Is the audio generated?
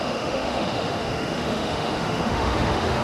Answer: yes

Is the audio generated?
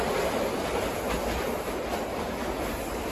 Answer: no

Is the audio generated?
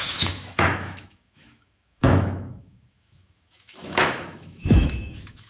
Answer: yes